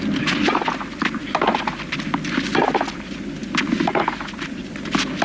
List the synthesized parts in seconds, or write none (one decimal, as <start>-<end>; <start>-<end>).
none

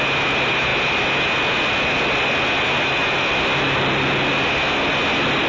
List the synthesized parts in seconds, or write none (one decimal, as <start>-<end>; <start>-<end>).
none

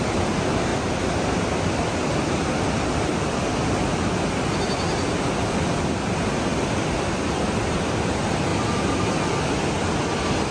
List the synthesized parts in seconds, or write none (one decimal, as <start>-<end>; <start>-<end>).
2.1-3.4; 6.5-7.2; 8.5-9.7

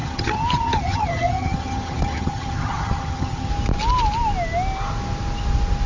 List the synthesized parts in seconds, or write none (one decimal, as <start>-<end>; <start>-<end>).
0.0-3.5

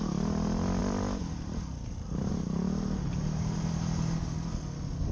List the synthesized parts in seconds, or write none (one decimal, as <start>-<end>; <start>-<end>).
0.8-2.3

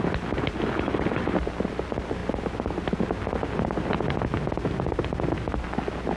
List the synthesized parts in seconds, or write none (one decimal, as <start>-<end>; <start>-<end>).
none

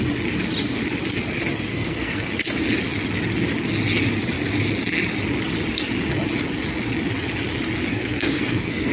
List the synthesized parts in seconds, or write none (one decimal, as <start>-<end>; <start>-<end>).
1.7-2.3; 7.9-8.9